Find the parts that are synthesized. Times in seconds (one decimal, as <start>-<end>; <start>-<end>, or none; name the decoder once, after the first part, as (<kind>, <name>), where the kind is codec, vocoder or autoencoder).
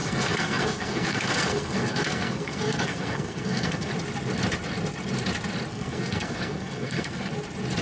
0.0-3.9 (codec, SNAC); 5.7-7.3